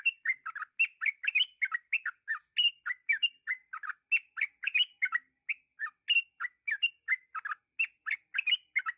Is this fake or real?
real